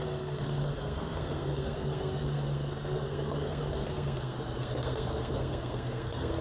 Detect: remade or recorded remade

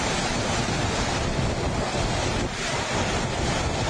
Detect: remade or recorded recorded